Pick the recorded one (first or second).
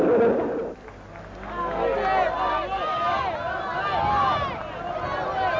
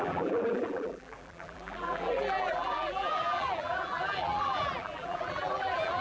first